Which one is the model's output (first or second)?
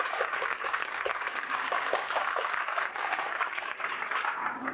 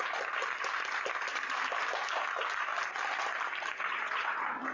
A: first